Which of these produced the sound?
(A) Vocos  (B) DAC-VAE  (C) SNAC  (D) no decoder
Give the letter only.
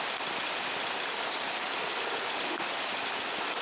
D